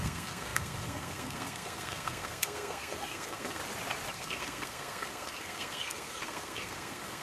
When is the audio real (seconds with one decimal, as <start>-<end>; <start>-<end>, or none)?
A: 3.6-4.1